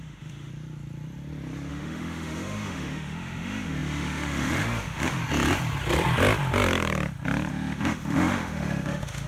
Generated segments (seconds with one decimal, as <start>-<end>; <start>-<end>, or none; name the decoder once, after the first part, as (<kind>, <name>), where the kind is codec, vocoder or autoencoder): 0.0-0.5 (autoencoder, DAC-VAE); 1.7-5.2; 7.5-9.3